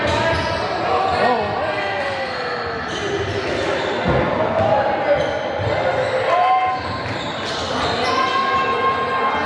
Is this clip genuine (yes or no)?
yes